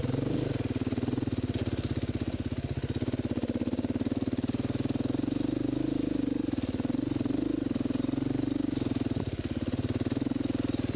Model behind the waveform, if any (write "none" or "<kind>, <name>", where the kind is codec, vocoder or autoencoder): none